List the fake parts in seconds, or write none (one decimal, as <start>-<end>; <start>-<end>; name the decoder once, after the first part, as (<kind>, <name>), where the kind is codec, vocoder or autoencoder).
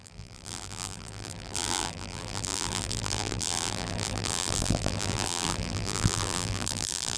0.0-7.2 (vocoder, BigVGAN v2)